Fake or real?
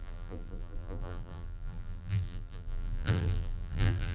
fake